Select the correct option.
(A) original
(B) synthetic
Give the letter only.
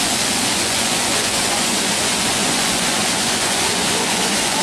B